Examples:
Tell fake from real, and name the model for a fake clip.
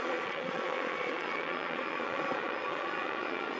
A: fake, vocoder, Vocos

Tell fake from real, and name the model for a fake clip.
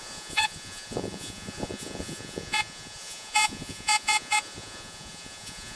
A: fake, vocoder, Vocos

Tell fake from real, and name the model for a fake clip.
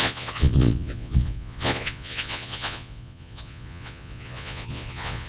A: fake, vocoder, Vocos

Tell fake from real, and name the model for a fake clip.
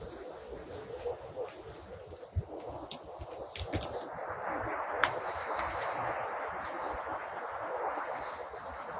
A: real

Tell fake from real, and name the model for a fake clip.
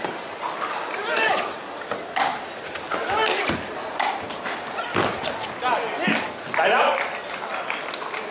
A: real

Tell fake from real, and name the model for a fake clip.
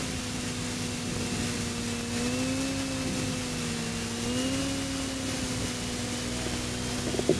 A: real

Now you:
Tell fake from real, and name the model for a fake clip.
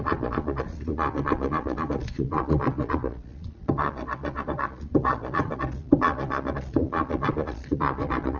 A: fake, vocoder, Vocos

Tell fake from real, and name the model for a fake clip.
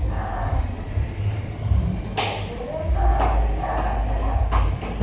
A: real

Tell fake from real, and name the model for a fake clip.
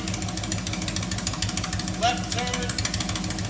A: real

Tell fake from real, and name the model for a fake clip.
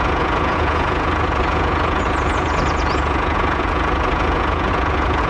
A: fake, vocoder, Vocos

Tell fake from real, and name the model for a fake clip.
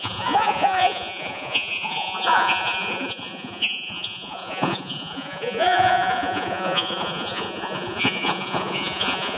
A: fake, vocoder, Vocos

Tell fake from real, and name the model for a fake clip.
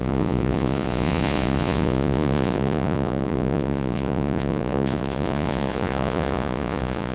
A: fake, vocoder, Vocos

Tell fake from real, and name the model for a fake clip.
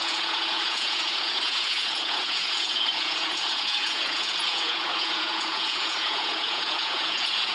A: fake, vocoder, Vocos